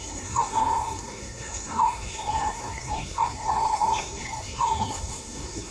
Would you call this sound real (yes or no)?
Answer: no